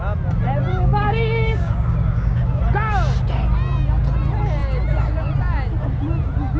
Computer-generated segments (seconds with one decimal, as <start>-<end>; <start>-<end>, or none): 0.7-2.6